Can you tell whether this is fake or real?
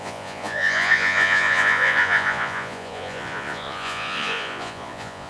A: fake